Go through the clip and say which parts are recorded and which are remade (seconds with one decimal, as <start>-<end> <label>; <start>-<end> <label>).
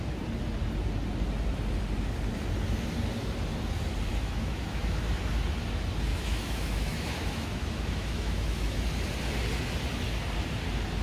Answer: 0.0-4.1 recorded; 4.1-5.2 remade; 5.2-6.1 recorded; 6.1-8.9 remade; 8.9-11.0 recorded